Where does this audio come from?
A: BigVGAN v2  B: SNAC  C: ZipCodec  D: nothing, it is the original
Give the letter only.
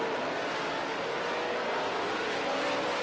D